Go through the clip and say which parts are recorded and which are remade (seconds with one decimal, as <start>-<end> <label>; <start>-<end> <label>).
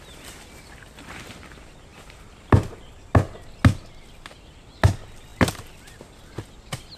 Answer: 0.0-7.0 recorded